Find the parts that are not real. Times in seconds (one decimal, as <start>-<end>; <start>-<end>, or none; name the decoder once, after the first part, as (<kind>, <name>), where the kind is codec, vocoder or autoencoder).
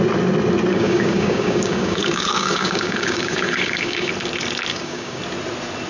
0.7-4.1 (codec, DAC); 4.7-5.2